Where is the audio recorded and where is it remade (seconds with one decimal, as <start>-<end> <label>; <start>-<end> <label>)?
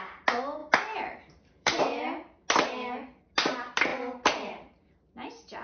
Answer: 0.0-0.6 recorded; 0.6-1.8 remade; 1.8-5.6 recorded